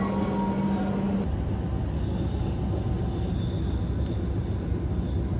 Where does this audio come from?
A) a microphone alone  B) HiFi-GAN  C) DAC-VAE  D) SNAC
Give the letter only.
A